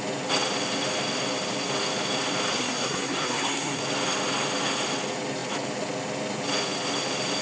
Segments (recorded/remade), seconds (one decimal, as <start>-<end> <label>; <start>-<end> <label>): 0.0-2.5 recorded; 2.5-3.8 remade; 3.8-7.4 recorded